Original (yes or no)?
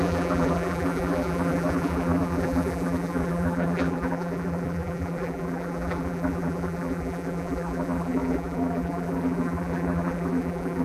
no